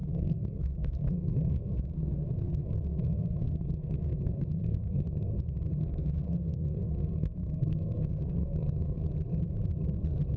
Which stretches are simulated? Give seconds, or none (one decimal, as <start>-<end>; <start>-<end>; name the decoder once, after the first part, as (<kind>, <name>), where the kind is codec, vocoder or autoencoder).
0.0-5.3 (codec, SNAC); 5.8-9.0